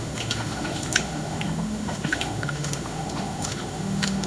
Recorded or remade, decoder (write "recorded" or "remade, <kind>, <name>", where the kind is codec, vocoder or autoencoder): remade, autoencoder, DAC-VAE